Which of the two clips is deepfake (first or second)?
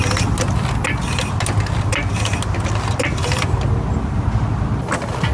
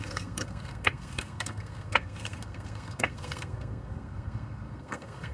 second